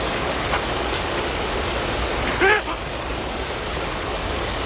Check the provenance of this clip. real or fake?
fake